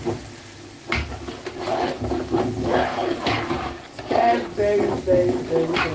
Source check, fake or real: real